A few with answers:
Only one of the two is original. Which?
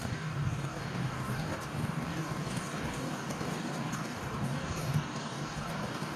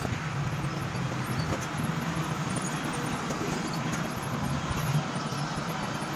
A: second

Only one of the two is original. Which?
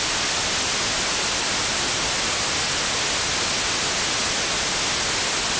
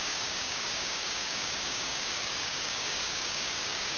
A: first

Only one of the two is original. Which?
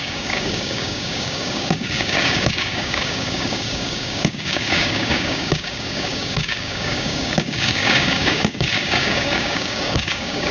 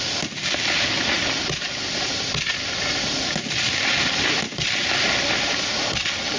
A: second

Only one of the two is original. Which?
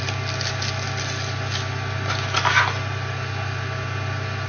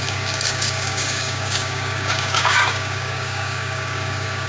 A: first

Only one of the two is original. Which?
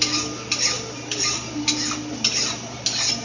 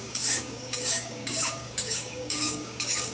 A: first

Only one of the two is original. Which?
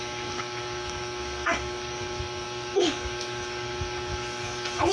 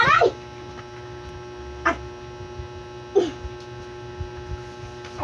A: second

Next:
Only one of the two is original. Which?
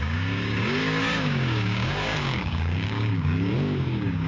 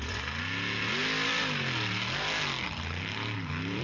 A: second